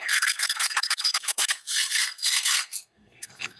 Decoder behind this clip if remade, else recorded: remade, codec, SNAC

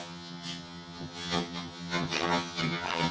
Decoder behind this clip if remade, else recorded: remade, vocoder, HiFi-GAN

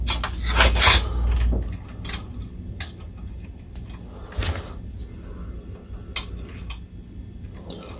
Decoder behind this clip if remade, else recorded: recorded